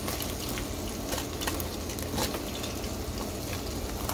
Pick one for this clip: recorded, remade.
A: recorded